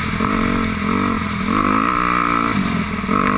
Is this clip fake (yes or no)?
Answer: no